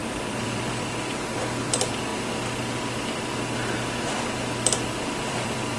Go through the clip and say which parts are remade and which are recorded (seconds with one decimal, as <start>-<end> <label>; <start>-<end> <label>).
0.0-2.1 remade; 2.1-5.3 recorded; 5.3-5.8 remade